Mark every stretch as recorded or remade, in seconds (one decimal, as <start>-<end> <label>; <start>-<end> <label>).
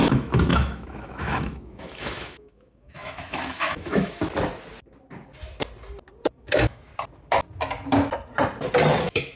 0.0-4.2 remade; 4.2-6.4 recorded; 6.4-6.9 remade; 6.9-9.0 recorded; 9.0-9.4 remade